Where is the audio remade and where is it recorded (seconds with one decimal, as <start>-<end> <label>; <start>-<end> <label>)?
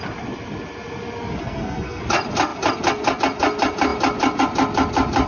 0.0-1.4 recorded; 1.4-2.0 remade; 2.0-5.3 recorded